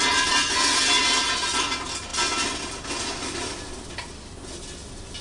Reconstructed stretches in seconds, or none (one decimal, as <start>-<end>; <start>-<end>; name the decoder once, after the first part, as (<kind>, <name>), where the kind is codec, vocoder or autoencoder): none